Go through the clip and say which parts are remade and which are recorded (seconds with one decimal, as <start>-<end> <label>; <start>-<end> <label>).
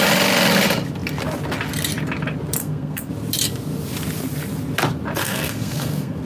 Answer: 0.0-2.6 recorded; 2.6-3.1 remade; 3.1-5.2 recorded; 5.2-6.2 remade